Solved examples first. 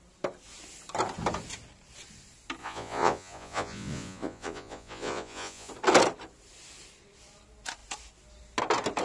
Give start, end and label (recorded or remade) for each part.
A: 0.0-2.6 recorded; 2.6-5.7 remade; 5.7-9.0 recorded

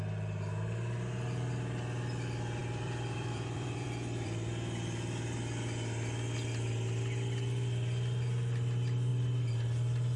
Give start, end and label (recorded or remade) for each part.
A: 0.0-2.6 recorded; 2.6-4.5 remade; 4.5-10.2 recorded

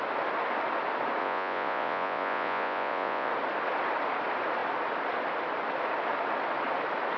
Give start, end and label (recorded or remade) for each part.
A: 0.0-1.2 recorded; 1.2-3.3 remade; 3.3-7.2 recorded